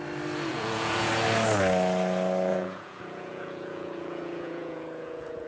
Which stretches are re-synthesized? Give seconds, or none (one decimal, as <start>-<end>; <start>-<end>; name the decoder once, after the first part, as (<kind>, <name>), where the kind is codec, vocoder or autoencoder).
0.5-1.1 (vocoder, Vocos); 2.5-5.5